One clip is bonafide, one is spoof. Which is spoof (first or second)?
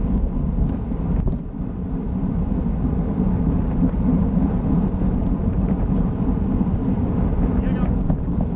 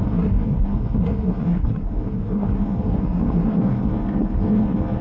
second